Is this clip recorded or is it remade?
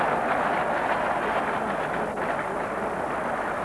recorded